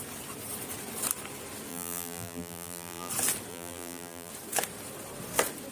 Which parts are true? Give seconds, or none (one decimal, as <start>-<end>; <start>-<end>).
0.0-1.7; 3.1-3.5; 4.3-5.7